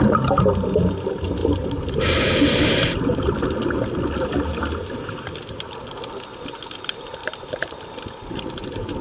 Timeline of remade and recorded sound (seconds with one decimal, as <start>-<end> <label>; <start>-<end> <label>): 0.0-1.4 recorded; 1.4-3.3 remade; 3.3-7.2 recorded; 7.2-8.4 remade; 8.4-9.0 recorded